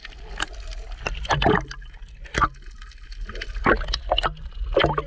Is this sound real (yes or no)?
yes